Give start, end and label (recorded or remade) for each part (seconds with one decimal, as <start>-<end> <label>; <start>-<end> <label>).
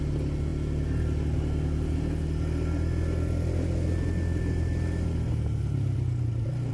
0.0-6.7 recorded